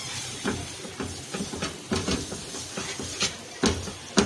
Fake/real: real